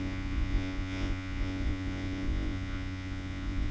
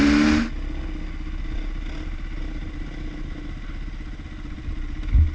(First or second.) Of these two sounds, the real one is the second